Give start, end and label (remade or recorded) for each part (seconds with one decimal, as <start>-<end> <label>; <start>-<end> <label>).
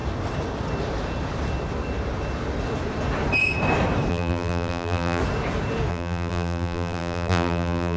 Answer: 0.0-4.1 recorded; 4.1-5.2 remade; 5.2-5.9 recorded; 5.9-8.0 remade